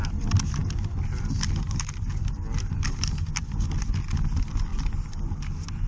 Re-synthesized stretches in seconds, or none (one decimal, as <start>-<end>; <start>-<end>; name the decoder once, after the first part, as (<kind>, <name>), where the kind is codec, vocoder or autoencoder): none